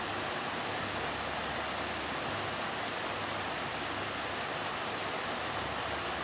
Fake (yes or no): no